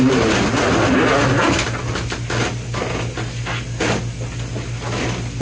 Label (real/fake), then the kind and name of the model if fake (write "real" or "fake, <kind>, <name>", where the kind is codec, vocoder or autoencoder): real